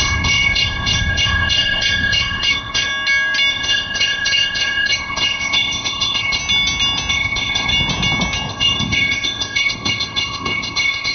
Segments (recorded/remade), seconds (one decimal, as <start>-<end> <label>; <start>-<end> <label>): 0.0-2.9 remade; 2.9-3.5 recorded; 3.5-6.4 remade; 6.4-7.1 recorded; 7.1-7.7 remade; 7.7-8.5 recorded; 8.5-11.1 remade

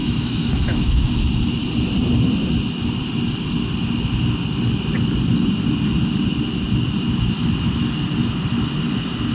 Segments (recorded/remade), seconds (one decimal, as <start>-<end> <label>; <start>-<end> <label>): 0.0-1.1 remade; 1.1-9.3 recorded

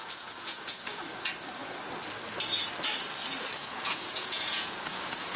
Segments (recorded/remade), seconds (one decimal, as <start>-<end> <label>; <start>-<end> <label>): 0.0-1.0 remade; 1.0-3.6 recorded; 3.6-5.4 remade

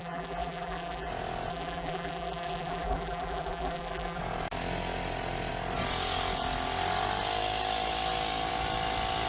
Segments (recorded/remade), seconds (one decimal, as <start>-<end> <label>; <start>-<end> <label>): 0.0-1.1 remade; 1.1-1.5 recorded; 1.5-4.2 remade; 4.2-9.3 recorded

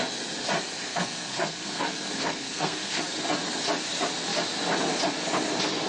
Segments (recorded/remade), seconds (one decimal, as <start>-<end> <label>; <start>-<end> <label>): 0.0-0.9 recorded; 0.9-3.0 remade; 3.0-5.9 recorded

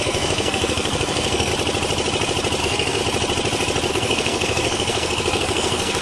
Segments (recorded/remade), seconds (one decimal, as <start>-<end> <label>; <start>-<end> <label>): 0.0-1.5 remade; 1.5-2.6 recorded; 2.6-3.0 remade; 3.0-3.9 recorded; 3.9-6.0 remade

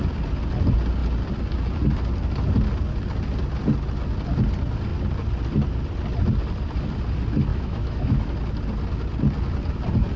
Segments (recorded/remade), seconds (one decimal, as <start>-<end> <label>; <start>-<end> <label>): 0.0-7.5 recorded; 7.5-8.3 remade; 8.3-10.2 recorded

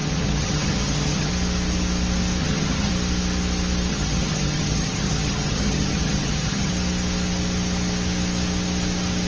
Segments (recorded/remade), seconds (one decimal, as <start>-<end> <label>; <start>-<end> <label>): 0.0-1.3 remade; 1.3-2.4 recorded; 2.4-2.9 remade; 2.9-3.9 recorded; 3.9-6.7 remade; 6.7-9.3 recorded